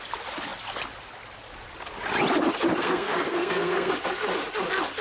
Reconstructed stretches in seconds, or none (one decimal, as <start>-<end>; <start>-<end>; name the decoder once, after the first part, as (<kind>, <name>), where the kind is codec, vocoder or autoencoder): 2.8-3.9 (codec, SNAC)